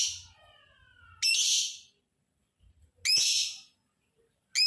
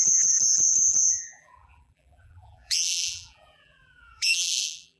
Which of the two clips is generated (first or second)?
second